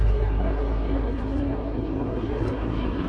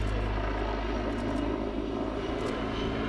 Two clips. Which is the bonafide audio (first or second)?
second